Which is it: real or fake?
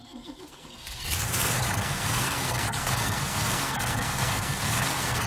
fake